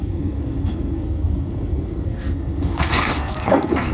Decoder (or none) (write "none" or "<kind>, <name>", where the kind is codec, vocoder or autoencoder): codec, SNAC